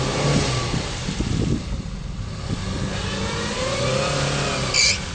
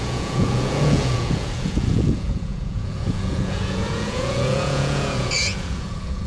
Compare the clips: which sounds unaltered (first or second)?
first